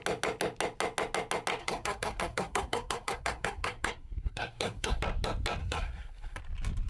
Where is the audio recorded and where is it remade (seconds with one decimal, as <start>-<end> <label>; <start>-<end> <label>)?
0.0-1.6 recorded; 1.6-5.0 remade; 5.0-5.6 recorded; 5.6-6.4 remade; 6.4-6.9 recorded

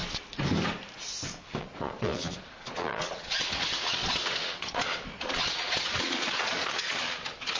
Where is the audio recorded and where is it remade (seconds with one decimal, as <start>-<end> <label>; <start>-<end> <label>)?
0.0-1.6 recorded; 1.6-7.6 remade

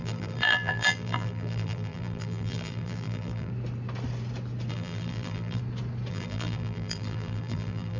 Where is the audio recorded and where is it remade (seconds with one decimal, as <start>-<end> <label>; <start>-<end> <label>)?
0.0-3.5 remade; 3.5-4.7 recorded; 4.7-5.6 remade; 5.6-6.1 recorded; 6.1-8.0 remade

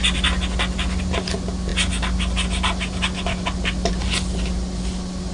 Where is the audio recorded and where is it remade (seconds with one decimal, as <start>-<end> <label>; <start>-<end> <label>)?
0.0-5.3 recorded

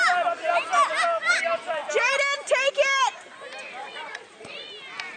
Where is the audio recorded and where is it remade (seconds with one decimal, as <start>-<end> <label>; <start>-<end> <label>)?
0.0-3.8 recorded; 3.8-4.7 remade; 4.7-5.2 recorded

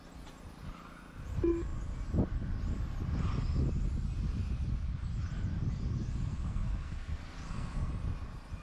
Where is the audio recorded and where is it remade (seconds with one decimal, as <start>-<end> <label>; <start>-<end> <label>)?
0.0-6.3 recorded; 6.3-7.9 remade; 7.9-8.6 recorded